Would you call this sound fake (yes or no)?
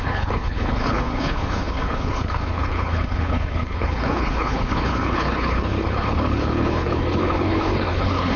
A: yes